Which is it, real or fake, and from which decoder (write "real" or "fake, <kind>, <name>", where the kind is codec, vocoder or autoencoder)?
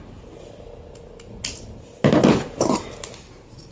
real